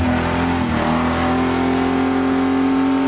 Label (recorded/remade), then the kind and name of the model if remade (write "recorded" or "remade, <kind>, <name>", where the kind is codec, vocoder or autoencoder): recorded